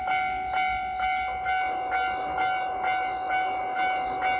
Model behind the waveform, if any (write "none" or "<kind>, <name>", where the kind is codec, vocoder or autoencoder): none